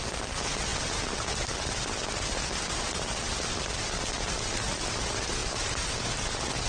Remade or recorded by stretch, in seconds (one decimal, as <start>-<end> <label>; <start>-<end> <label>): 0.0-6.7 recorded